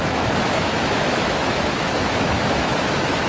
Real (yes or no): no